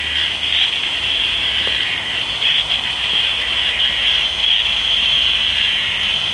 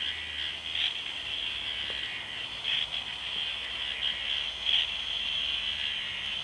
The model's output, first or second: first